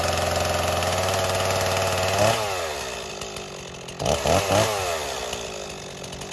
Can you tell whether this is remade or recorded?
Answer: recorded